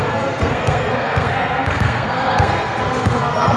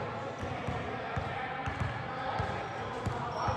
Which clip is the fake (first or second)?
first